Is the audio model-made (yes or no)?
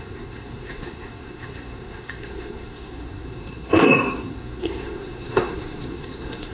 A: yes